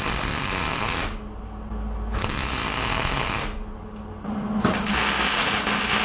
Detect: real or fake real